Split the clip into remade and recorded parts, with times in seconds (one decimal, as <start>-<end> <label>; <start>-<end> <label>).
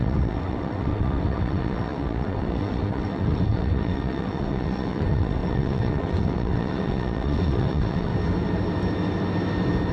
0.0-8.1 remade; 8.1-9.9 recorded